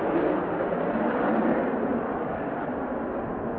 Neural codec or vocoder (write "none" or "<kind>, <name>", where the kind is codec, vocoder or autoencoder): none